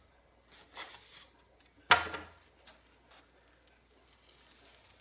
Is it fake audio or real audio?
real